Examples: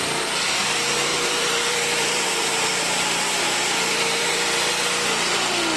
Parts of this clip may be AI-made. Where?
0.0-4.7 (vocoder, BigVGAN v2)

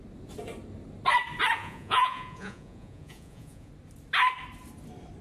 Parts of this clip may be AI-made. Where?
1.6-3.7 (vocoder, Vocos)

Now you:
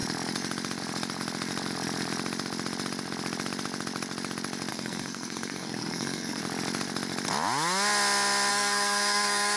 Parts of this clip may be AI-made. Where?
4.7-6.4 (codec, SNAC); 8.5-9.6

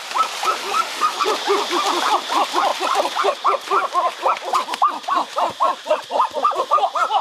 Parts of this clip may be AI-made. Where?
0.6-1.2 (autoencoder, DAC-VAE)